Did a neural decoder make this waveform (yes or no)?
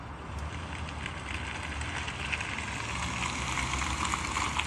no